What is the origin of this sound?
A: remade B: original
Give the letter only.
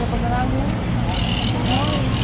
B